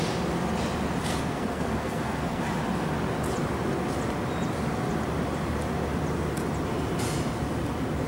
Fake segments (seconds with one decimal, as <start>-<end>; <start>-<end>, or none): 1.1-2.4